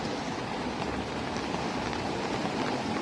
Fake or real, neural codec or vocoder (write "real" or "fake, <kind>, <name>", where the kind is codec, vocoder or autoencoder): real